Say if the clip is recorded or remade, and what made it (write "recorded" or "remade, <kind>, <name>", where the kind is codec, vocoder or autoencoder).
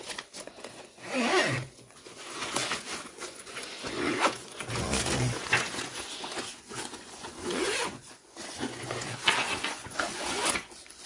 remade, vocoder, Vocos